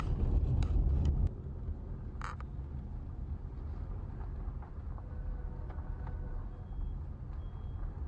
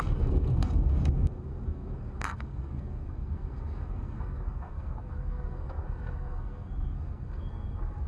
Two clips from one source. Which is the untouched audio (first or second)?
first